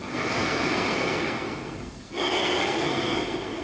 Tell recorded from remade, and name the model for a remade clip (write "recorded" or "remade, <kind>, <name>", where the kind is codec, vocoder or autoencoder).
remade, codec, SNAC